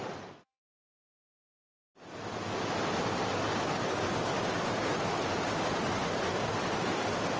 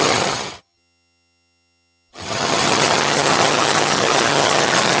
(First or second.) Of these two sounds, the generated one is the second